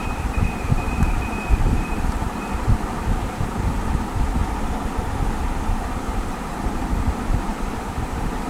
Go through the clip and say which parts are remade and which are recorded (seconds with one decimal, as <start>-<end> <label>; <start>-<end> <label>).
0.0-4.4 remade; 4.4-5.8 recorded; 5.8-8.5 remade